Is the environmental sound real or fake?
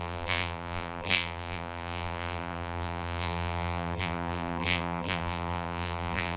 fake